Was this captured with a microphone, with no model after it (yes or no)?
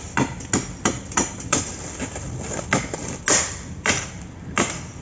yes